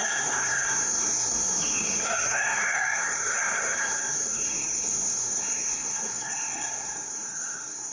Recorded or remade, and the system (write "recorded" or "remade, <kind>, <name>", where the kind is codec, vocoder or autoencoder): remade, codec, SNAC